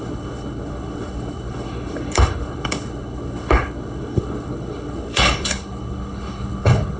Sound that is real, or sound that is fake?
fake